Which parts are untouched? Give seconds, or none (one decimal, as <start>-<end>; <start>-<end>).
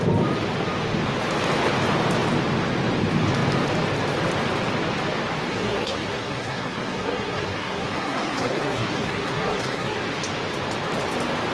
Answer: 0.0-5.5; 10.0-11.5